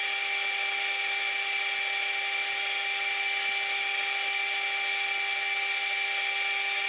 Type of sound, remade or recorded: recorded